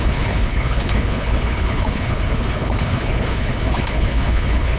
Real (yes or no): no